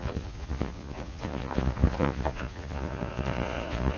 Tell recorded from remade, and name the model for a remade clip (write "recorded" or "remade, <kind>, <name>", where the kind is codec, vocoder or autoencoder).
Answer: remade, vocoder, Vocos